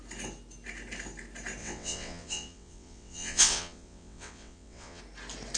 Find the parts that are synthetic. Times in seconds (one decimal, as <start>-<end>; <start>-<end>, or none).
1.6-5.0